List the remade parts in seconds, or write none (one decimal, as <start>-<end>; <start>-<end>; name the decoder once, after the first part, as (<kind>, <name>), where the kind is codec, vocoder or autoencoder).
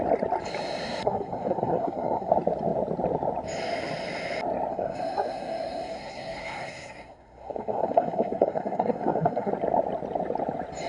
1.0-2.3 (codec, SNAC); 4.7-9.5